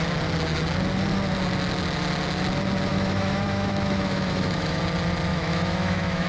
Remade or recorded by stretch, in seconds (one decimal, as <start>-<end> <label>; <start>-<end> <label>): 0.0-2.9 recorded; 2.9-4.8 remade; 4.8-5.3 recorded; 5.3-6.3 remade